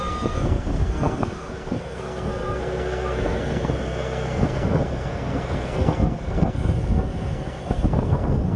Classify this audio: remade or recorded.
remade